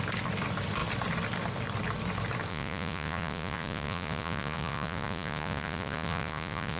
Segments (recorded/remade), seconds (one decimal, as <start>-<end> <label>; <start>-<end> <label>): 0.0-2.5 recorded; 2.5-6.8 remade